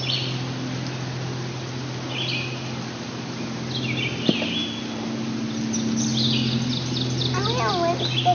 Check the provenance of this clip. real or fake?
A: real